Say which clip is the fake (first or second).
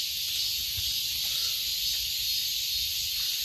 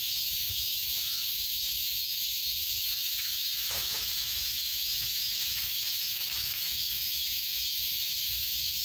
second